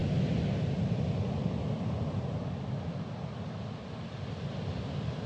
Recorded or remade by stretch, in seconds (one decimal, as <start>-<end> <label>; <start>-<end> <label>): 0.0-5.3 recorded